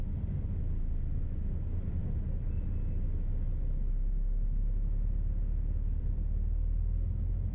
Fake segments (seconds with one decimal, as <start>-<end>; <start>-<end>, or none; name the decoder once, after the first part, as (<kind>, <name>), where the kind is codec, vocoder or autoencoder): none